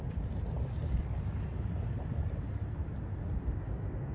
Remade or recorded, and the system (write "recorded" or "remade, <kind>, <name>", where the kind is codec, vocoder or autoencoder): recorded